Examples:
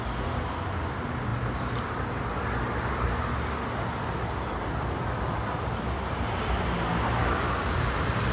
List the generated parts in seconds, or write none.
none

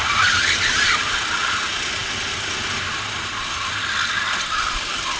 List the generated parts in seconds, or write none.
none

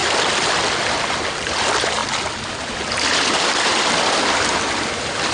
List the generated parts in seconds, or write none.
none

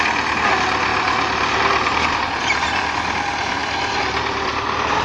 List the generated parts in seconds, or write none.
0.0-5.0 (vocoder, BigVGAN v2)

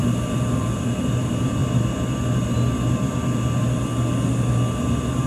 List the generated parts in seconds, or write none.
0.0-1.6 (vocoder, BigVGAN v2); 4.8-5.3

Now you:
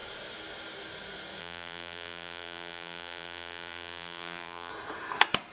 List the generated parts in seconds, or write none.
1.4-4.7 (vocoder, BigVGAN v2)

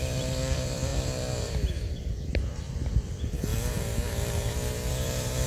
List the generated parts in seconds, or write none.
0.0-0.9 (vocoder, BigVGAN v2); 3.0-3.5; 4.9-5.5

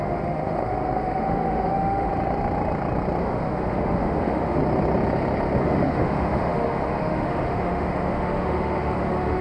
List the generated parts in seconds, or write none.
0.0-2.1 (autoencoder, DAC-VAE); 3.2-4.6; 5.6-9.4